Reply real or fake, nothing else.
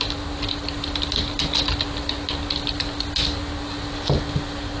real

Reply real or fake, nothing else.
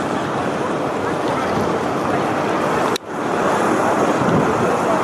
real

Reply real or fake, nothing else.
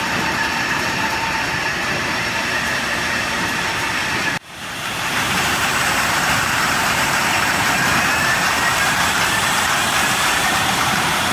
fake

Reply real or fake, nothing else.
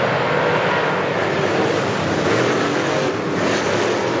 real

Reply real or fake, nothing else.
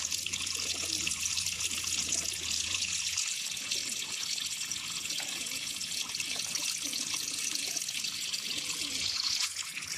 fake